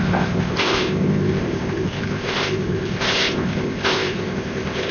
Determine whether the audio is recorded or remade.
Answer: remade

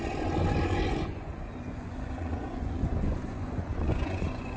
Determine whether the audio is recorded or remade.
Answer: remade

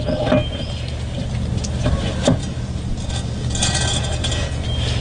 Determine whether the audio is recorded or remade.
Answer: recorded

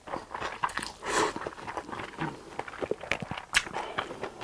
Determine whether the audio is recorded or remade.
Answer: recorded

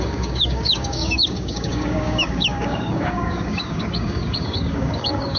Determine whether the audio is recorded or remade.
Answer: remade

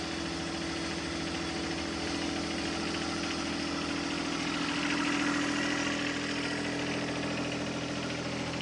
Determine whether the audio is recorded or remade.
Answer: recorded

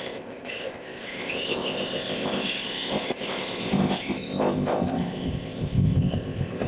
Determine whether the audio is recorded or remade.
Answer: remade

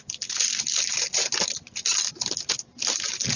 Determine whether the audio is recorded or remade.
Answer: recorded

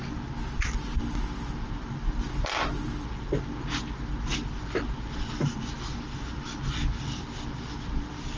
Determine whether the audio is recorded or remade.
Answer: recorded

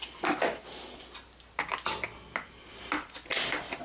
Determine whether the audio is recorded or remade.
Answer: recorded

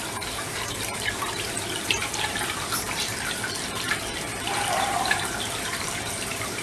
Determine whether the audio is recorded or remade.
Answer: remade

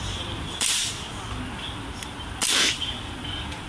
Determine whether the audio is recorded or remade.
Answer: recorded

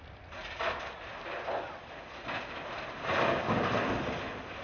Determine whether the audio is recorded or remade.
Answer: recorded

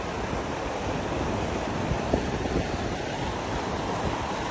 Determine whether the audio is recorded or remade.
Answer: recorded